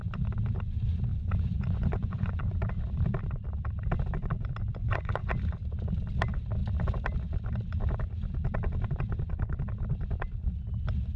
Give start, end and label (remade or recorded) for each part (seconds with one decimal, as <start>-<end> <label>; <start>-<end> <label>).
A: 0.0-1.1 recorded; 1.1-2.7 remade; 2.7-4.8 recorded; 4.8-5.3 remade; 5.3-11.2 recorded

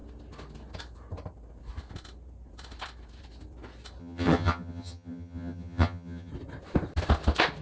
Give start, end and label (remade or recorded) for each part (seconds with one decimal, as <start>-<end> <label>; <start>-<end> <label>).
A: 0.0-4.0 recorded; 4.0-6.3 remade; 6.3-7.6 recorded

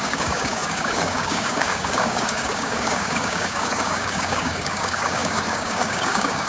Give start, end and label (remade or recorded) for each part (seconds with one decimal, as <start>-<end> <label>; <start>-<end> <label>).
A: 0.0-6.5 remade

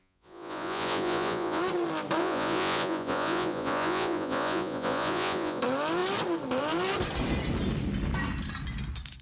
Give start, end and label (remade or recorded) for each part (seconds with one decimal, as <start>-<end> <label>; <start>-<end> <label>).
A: 0.0-1.6 remade; 1.6-2.2 recorded; 2.2-5.6 remade; 5.6-9.2 recorded

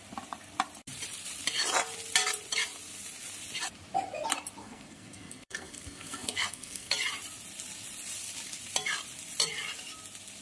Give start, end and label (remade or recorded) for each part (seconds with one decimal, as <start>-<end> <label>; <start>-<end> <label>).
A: 0.0-4.6 recorded; 4.6-6.9 remade; 6.9-10.4 recorded

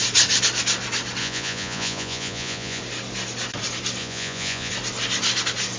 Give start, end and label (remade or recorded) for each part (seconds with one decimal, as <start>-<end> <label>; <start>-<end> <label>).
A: 0.0-1.2 recorded; 1.2-2.8 remade; 2.8-4.0 recorded; 4.0-4.7 remade; 4.7-5.8 recorded

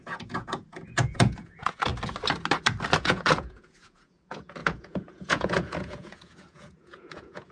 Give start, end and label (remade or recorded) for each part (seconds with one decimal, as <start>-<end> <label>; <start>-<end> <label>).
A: 0.0-1.9 remade; 1.9-3.0 recorded; 3.0-7.5 remade